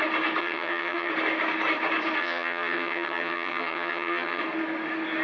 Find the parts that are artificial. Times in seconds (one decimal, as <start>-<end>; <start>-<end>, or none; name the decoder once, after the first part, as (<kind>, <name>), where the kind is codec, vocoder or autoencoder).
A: 0.4-1.1 (vocoder, HiFi-GAN); 2.2-4.4